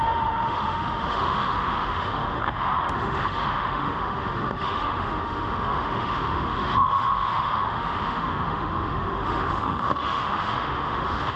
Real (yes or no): no